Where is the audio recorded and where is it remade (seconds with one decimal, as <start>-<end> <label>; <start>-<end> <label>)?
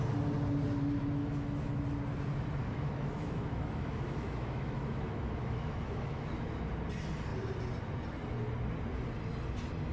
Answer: 0.0-1.2 recorded; 1.2-1.8 remade; 1.8-2.6 recorded; 2.6-6.7 remade; 6.7-9.9 recorded